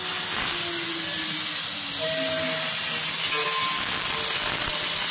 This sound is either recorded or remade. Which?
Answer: recorded